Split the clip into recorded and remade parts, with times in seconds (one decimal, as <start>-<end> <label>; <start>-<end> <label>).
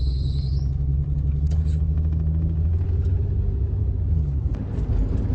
0.0-5.3 recorded